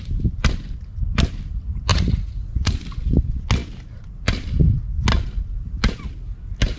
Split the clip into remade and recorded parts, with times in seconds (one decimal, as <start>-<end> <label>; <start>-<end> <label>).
0.0-1.9 recorded; 1.9-2.7 remade; 2.7-6.8 recorded